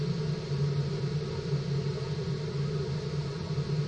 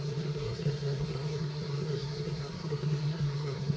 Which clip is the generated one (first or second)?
second